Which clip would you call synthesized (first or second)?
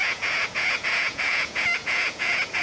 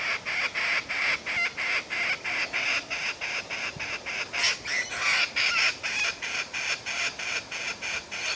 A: first